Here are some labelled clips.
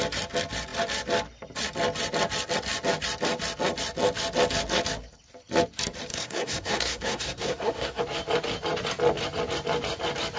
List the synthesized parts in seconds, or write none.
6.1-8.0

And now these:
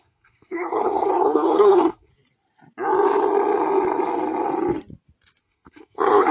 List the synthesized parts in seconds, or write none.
0.0-2.1; 5.4-6.3

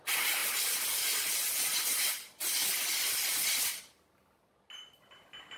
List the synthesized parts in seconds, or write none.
none

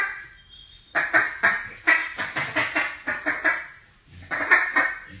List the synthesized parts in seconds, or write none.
none